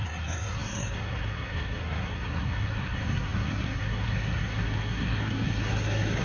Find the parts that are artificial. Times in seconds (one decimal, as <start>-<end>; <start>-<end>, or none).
0.0-6.2